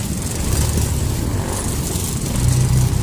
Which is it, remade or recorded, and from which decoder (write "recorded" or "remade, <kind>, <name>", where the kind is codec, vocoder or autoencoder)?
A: recorded